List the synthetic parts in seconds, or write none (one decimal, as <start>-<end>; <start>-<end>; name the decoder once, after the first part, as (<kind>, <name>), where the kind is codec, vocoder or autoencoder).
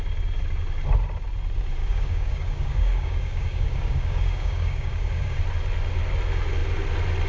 1.8-5.4 (codec, DAC)